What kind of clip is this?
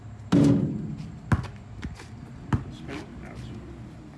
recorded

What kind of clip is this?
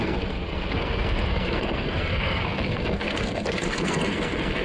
remade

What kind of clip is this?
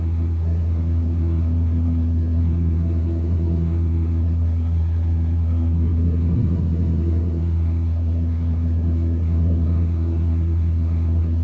remade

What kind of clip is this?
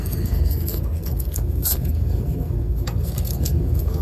remade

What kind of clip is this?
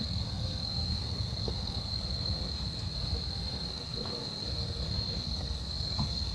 remade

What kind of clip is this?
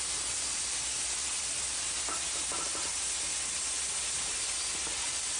recorded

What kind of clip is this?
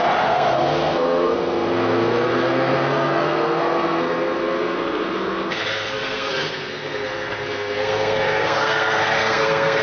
remade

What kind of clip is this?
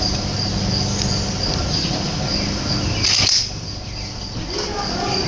recorded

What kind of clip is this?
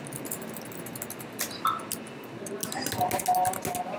recorded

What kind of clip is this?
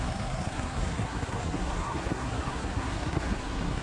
remade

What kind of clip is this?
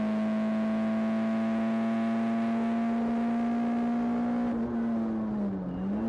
recorded